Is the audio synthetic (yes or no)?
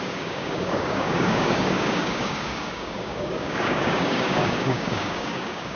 yes